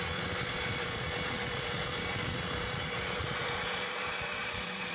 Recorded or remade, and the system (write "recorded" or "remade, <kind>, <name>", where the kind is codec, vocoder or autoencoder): remade, vocoder, Vocos